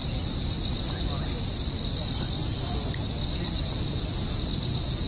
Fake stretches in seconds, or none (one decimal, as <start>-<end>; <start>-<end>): 1.0-2.4